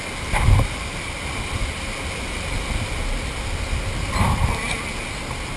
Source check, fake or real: real